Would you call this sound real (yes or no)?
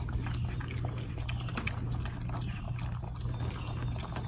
yes